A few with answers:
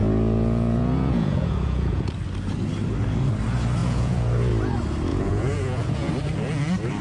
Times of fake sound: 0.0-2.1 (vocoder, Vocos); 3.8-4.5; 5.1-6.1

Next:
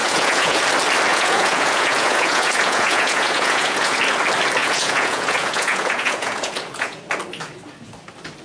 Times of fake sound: 0.0-0.6 (vocoder, Vocos); 1.1-4.0; 4.6-7.0

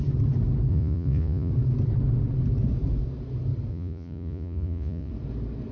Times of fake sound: 0.7-1.5 (vocoder, Vocos); 3.7-5.1

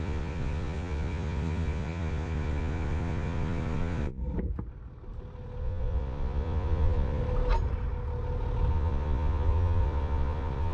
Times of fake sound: 0.0-4.2 (vocoder, Vocos); 5.6-7.2; 8.7-10.7

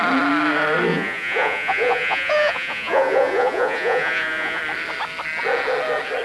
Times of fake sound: 0.9-4.6 (vocoder, Vocos)

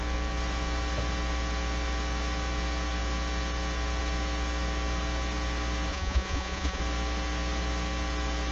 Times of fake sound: 5.9-6.8 (vocoder, Vocos)

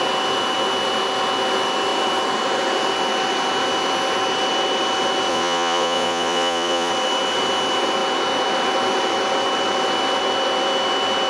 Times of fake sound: 5.3-6.9 (vocoder, Vocos)

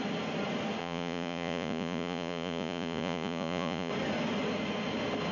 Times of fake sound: 0.8-3.9 (vocoder, Vocos)